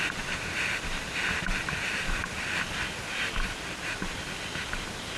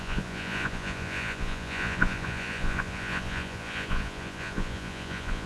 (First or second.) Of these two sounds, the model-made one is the second